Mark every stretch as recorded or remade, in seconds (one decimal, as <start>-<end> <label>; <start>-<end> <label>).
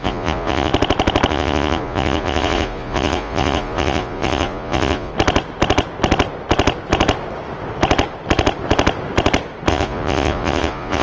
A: 0.0-0.7 remade; 0.7-1.3 recorded; 1.3-5.1 remade; 5.1-9.7 recorded; 9.7-11.0 remade